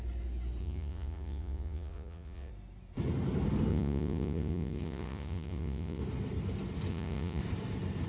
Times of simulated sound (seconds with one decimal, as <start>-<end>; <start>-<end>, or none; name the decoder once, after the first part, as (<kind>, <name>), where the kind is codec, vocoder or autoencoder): 0.6-2.5 (vocoder, Vocos); 3.7-6.0; 6.9-7.4